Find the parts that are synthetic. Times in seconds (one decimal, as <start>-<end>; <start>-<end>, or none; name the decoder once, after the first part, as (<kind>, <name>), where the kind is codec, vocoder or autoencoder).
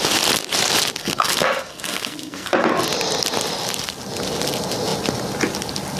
1.0-2.7 (codec, SNAC)